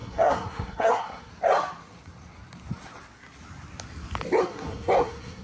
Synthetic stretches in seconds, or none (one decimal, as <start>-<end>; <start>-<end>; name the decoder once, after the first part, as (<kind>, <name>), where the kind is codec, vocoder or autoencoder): 0.0-1.3 (codec, SNAC); 4.4-5.4